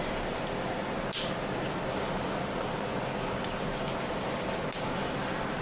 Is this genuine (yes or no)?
yes